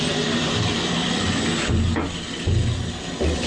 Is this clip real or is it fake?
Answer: real